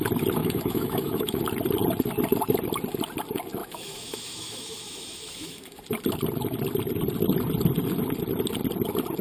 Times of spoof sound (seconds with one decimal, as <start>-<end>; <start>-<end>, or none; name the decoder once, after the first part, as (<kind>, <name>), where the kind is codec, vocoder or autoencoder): 0.4-1.4 (autoencoder, DAC-VAE); 3.6-5.8